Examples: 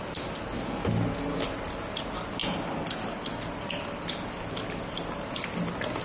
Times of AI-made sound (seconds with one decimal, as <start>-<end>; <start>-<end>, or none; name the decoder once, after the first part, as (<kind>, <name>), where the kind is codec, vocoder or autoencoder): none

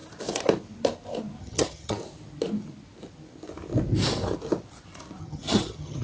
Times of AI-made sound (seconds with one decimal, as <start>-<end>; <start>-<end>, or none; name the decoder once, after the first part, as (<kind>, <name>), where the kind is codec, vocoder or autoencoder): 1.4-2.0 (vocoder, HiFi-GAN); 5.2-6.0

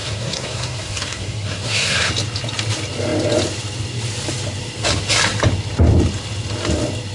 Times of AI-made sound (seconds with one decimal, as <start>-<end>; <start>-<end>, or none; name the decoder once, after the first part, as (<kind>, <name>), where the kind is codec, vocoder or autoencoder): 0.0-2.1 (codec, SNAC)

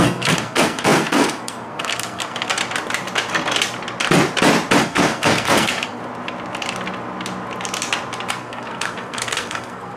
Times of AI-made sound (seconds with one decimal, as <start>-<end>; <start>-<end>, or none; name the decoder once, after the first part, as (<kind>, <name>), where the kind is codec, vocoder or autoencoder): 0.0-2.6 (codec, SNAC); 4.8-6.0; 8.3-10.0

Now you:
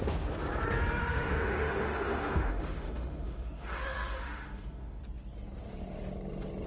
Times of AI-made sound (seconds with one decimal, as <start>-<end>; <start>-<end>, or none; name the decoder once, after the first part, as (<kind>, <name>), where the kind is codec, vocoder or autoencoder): 1.0-5.0 (autoencoder, DAC-VAE)

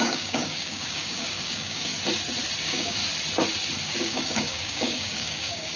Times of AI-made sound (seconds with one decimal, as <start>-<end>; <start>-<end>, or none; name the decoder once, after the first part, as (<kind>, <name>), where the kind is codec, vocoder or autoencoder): 0.0-1.9 (codec, DAC); 2.6-3.0; 4.0-5.8

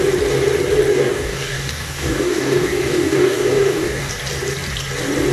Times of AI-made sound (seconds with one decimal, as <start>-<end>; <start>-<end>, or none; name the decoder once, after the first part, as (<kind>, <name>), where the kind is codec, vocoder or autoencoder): 0.9-4.1 (codec, DAC)

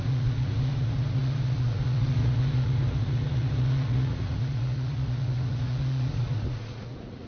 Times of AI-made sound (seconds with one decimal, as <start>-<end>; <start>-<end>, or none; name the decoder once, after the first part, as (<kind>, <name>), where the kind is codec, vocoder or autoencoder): 0.0-7.3 (vocoder, Vocos)